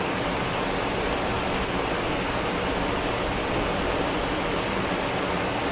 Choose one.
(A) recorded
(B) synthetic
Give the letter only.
A